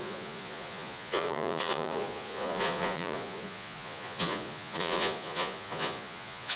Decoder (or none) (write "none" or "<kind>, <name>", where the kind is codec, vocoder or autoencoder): vocoder, Vocos